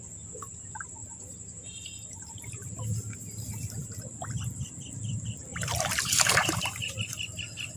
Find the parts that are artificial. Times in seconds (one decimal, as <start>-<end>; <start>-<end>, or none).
1.0-2.8; 5.5-6.9